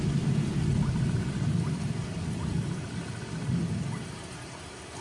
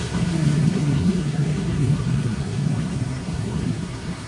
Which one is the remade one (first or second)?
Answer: second